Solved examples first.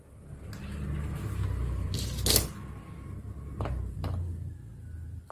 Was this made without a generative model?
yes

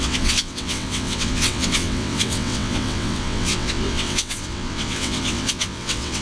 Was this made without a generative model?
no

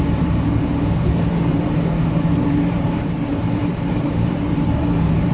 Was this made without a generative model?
no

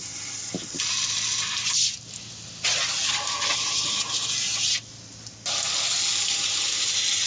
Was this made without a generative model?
yes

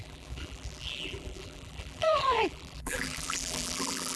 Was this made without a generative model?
no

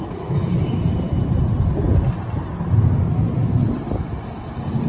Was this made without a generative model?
yes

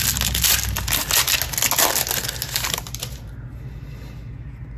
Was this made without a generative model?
yes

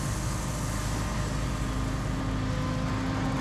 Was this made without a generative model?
yes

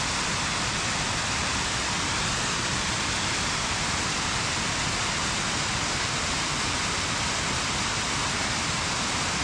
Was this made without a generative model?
yes